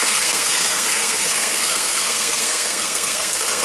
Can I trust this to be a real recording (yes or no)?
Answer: no